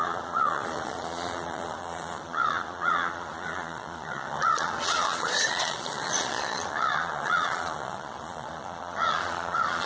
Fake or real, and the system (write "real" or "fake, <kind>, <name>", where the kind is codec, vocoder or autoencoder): fake, vocoder, Vocos